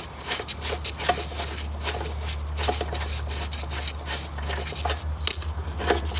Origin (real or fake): real